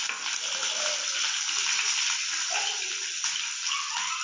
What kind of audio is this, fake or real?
real